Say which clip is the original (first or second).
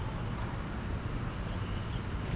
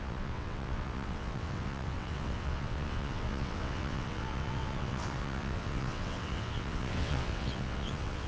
first